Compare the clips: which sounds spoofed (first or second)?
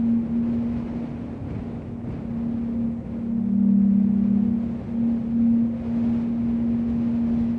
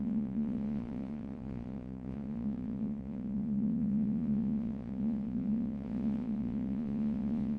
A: second